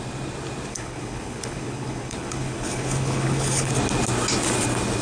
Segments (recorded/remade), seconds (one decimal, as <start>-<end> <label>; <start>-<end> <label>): 0.0-0.7 recorded; 0.7-3.7 remade; 3.7-5.0 recorded

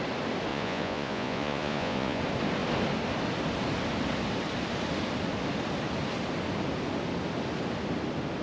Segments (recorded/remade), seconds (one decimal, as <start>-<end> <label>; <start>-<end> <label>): 0.0-0.5 recorded; 0.5-2.2 remade; 2.2-8.4 recorded

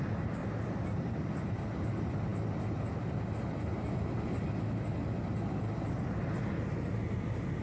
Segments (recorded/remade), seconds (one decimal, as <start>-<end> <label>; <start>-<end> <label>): 0.0-0.4 recorded; 0.4-1.4 remade; 1.4-7.6 recorded

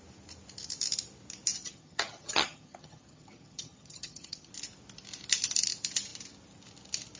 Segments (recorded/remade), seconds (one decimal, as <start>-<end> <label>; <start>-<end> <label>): 0.0-1.6 recorded; 1.6-4.5 remade; 4.5-7.2 recorded

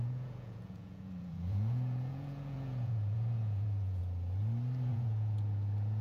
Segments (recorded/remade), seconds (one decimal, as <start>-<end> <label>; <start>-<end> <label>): 0.0-4.0 remade; 4.0-4.9 recorded; 4.9-6.0 remade

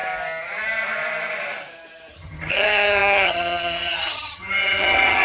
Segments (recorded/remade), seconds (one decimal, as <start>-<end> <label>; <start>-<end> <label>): 0.0-2.1 recorded; 2.1-5.2 remade